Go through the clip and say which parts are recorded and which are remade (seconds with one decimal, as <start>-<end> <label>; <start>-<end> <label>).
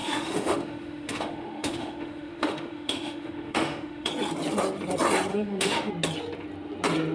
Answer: 0.0-4.1 remade; 4.1-5.3 recorded; 5.3-5.9 remade; 5.9-7.1 recorded